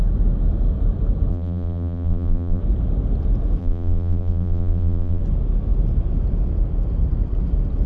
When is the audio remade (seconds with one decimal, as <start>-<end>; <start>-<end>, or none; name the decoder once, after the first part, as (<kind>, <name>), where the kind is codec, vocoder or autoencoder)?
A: 1.3-2.6 (vocoder, BigVGAN v2); 3.6-5.2